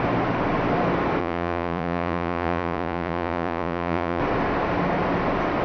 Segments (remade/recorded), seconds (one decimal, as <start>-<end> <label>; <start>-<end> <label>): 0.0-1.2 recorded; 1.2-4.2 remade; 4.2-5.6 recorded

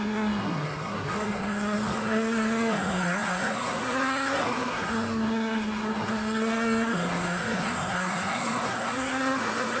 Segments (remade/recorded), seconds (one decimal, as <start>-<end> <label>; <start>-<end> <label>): 0.0-9.8 remade

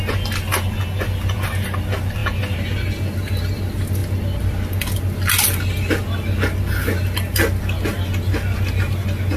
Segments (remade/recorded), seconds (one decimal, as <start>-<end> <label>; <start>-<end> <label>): 0.0-9.4 recorded

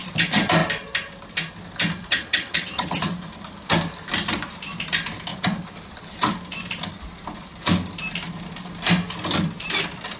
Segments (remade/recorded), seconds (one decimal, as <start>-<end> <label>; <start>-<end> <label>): 0.0-2.1 recorded; 2.1-3.0 remade; 3.0-10.2 recorded

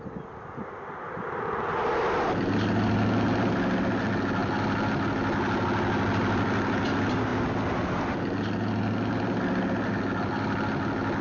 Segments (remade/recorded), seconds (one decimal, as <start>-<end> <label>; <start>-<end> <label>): 0.0-11.2 recorded

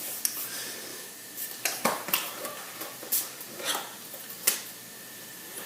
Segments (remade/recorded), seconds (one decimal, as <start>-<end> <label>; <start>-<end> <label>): 0.0-0.9 recorded; 0.9-1.4 remade; 1.4-5.7 recorded

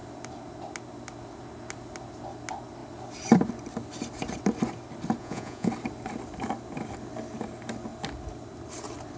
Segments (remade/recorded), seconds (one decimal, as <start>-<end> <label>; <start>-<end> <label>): 0.0-5.2 recorded; 5.2-5.7 remade; 5.7-9.2 recorded